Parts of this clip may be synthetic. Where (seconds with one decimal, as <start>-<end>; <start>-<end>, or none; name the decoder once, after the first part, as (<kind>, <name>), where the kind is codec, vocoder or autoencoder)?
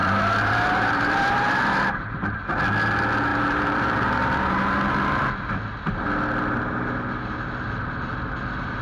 0.0-2.4 (vocoder, BigVGAN v2); 3.3-5.3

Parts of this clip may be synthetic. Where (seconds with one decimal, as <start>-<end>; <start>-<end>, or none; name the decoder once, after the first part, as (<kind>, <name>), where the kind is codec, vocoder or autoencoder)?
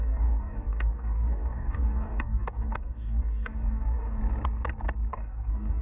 0.0-4.2 (codec, DAC); 5.1-5.8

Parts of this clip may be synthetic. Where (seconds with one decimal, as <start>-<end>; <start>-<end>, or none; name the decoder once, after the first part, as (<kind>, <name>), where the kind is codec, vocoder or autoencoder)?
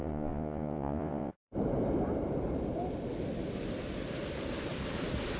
0.0-1.3 (vocoder, Vocos)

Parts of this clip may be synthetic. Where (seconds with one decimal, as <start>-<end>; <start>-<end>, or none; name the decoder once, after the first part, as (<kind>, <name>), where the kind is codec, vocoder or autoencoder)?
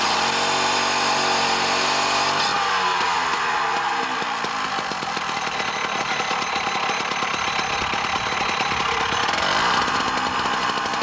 none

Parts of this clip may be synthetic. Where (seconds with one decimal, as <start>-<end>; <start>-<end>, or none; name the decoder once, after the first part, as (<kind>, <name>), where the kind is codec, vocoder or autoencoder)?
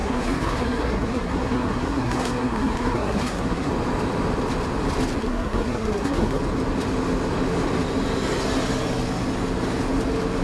0.0-3.7 (codec, SNAC); 5.2-6.4